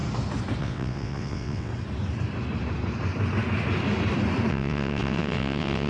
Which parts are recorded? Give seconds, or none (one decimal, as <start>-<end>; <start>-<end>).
0.0-0.6; 1.7-4.5